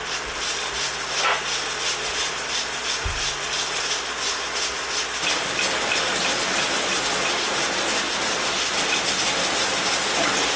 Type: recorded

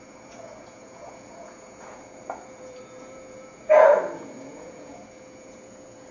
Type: remade